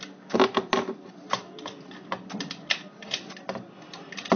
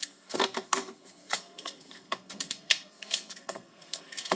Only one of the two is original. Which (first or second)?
first